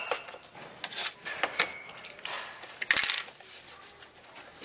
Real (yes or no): yes